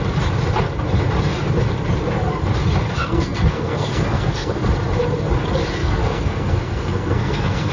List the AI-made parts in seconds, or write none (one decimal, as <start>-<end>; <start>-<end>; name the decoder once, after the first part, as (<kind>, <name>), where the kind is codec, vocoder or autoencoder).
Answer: 3.0-4.7 (codec, SNAC); 5.8-7.7